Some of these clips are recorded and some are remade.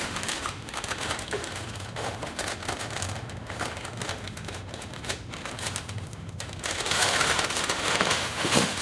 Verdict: remade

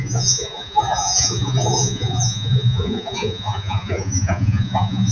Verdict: remade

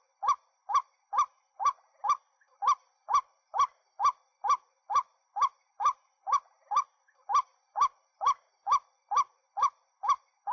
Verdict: recorded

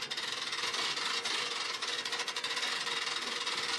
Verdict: remade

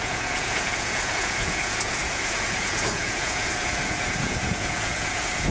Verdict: remade